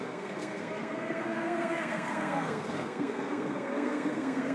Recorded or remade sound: remade